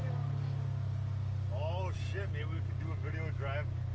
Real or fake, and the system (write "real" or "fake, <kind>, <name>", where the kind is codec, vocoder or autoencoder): real